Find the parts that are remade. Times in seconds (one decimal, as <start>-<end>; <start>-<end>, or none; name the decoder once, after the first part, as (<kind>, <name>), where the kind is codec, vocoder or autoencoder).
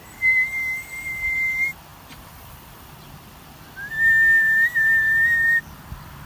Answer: none